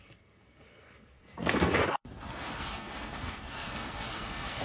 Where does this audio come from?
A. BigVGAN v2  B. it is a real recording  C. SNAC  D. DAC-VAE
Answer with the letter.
C